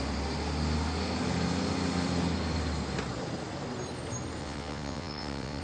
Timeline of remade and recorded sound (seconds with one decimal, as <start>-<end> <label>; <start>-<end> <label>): 0.0-4.4 recorded; 4.4-5.6 remade